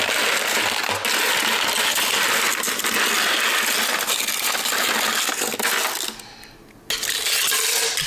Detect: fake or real real